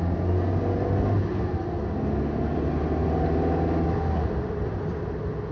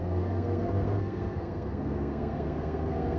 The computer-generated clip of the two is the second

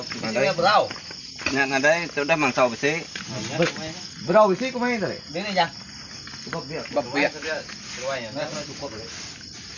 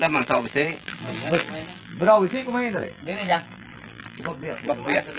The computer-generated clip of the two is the second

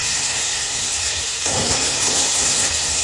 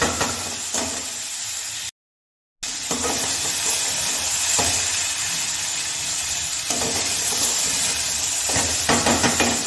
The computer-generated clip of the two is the first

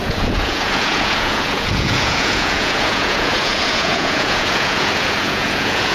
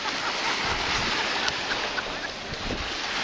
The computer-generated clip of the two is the first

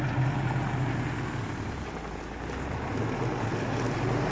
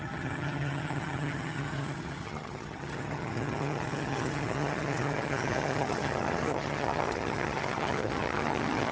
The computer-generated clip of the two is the second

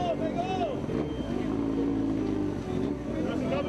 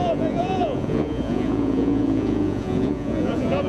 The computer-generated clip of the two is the second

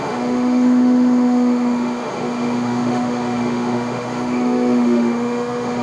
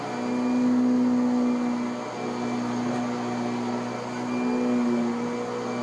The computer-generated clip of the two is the first